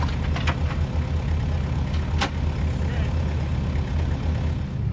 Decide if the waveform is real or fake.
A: real